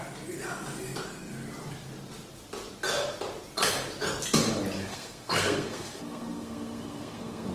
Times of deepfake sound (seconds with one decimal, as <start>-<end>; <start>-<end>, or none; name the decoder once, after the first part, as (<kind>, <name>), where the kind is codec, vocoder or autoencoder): 4.9-7.5 (codec, SNAC)